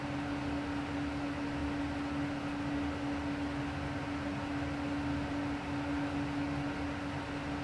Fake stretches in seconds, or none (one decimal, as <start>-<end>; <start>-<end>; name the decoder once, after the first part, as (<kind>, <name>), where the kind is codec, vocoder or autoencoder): none